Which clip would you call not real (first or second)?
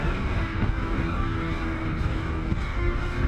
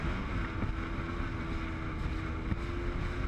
first